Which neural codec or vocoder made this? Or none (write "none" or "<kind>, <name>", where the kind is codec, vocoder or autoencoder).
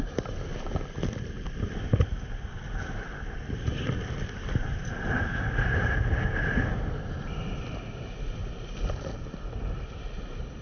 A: none